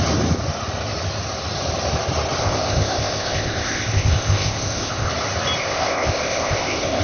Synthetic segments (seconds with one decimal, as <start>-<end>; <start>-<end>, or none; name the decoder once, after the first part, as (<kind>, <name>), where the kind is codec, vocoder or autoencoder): 2.4-5.1 (codec, ZipCodec); 5.6-7.0